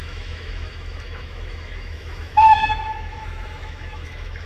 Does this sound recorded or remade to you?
remade